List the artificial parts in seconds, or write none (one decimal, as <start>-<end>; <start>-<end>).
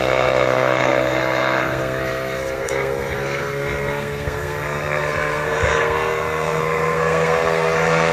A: 0.0-8.1